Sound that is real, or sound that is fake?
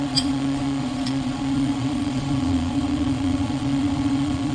fake